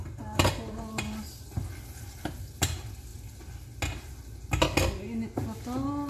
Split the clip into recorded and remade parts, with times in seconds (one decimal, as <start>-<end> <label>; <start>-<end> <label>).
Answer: 0.0-6.1 recorded